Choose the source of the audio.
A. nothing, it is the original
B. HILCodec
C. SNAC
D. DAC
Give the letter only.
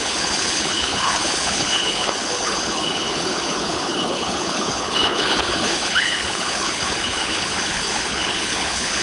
B